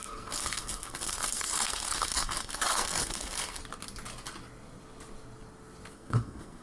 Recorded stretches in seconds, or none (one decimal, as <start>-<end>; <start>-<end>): 3.6-5.9